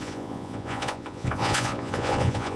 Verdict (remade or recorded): remade